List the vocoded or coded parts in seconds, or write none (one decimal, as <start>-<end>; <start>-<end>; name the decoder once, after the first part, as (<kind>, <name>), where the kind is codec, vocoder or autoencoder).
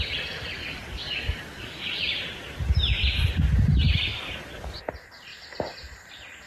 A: 0.6-2.0 (codec, DAC)